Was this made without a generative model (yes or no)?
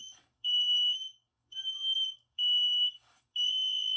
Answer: no